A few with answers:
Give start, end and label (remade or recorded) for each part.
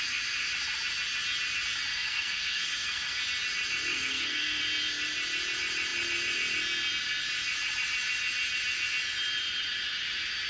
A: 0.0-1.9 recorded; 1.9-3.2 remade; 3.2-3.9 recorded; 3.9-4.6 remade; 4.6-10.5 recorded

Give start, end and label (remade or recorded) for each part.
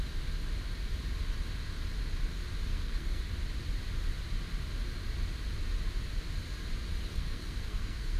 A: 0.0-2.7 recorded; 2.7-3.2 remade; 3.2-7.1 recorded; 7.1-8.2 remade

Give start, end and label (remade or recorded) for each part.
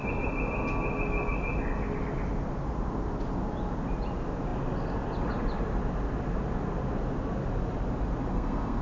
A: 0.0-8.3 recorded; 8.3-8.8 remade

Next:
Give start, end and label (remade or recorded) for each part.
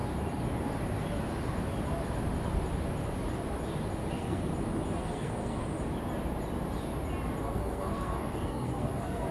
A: 0.0-4.1 recorded; 4.1-4.5 remade; 4.5-5.0 recorded; 5.0-5.6 remade; 5.6-7.4 recorded; 7.4-9.3 remade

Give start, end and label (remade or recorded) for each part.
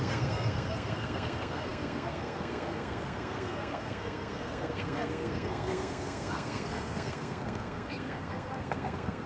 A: 0.0-9.3 remade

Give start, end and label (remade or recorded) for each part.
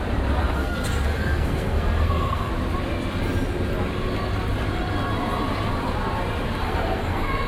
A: 0.0-0.4 recorded; 0.4-2.5 remade; 2.5-6.6 recorded; 6.6-7.5 remade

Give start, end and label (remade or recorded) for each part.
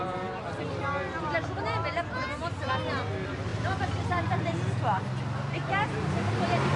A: 0.0-6.8 recorded